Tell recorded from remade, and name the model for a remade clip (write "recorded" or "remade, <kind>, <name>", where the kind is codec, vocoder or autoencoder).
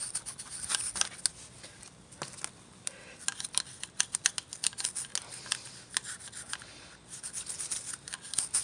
recorded